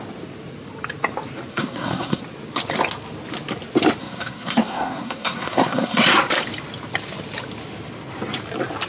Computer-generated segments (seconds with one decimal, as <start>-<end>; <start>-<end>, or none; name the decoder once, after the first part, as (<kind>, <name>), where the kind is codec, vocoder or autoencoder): 1.5-2.2 (codec, SNAC); 4.0-6.0